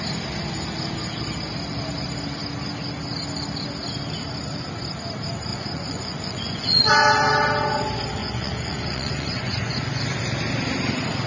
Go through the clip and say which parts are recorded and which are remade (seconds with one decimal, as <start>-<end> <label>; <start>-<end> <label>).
0.0-5.5 recorded; 5.5-6.9 remade; 6.9-8.2 recorded; 8.2-10.0 remade; 10.0-11.3 recorded